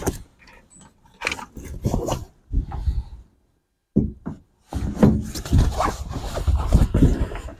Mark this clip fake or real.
real